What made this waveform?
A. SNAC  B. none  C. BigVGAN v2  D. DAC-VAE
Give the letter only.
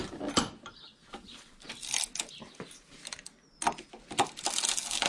B